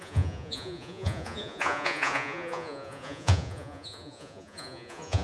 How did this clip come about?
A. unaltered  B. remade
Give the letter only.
B